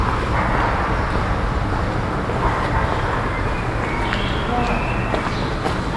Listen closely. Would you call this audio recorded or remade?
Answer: recorded